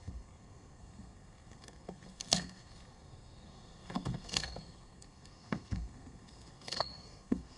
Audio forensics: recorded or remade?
remade